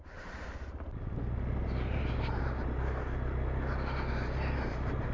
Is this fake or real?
real